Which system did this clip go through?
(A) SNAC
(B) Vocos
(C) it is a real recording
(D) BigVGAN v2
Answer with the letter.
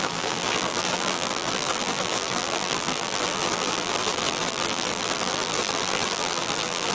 D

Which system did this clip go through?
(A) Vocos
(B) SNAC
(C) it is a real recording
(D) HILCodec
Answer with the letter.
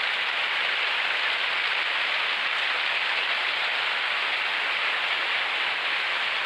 C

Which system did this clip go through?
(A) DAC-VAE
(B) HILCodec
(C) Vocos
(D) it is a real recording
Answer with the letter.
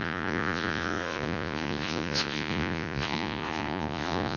C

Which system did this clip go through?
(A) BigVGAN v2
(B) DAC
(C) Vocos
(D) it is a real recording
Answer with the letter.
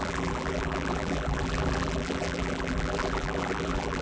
A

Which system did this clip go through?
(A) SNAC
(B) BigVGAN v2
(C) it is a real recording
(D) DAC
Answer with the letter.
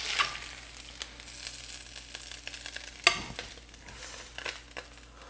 C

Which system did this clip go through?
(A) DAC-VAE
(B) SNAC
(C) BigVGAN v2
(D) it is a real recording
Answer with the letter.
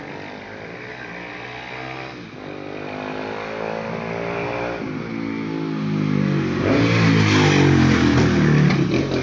D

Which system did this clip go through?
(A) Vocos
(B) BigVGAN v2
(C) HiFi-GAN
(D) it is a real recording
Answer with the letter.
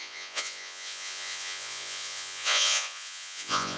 A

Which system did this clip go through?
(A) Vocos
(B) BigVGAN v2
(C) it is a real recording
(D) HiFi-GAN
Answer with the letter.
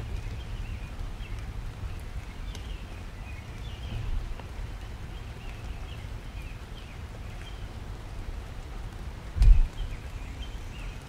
B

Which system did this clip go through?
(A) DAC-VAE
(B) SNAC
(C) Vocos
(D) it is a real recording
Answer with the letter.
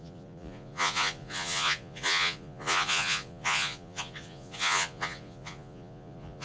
C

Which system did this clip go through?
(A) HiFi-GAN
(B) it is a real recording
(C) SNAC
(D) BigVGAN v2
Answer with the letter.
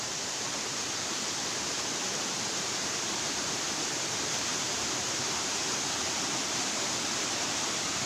D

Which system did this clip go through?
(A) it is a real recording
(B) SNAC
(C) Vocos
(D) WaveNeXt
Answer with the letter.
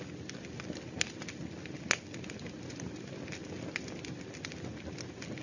A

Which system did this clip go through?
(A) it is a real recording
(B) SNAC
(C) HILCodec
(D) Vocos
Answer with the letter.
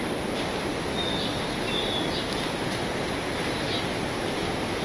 A